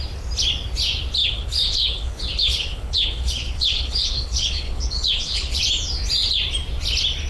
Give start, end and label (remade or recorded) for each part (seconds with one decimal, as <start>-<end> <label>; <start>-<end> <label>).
0.0-1.2 recorded; 1.2-5.6 remade; 5.6-7.3 recorded